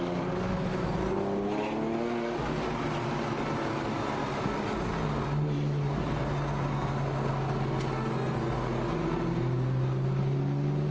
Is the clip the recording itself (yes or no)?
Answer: yes